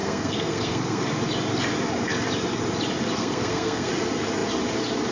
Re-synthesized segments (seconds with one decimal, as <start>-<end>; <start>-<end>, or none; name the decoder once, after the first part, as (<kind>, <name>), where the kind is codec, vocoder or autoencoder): 0.0-1.1 (codec, SNAC); 3.2-3.9